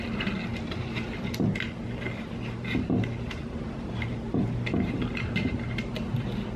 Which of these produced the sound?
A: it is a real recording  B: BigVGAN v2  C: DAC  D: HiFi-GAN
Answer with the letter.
A